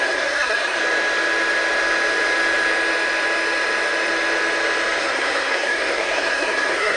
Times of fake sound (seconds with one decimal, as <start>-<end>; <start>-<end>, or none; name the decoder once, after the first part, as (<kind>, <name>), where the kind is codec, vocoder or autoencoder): 0.0-0.8 (codec, SNAC); 5.0-7.0